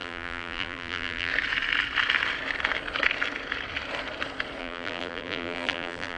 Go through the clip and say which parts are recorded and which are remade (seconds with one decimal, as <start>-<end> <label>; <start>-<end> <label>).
0.0-1.3 remade; 1.3-4.6 recorded; 4.6-6.2 remade